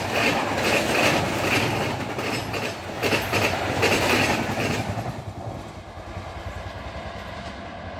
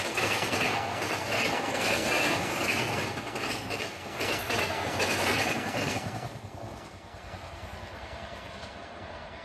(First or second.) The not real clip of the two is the second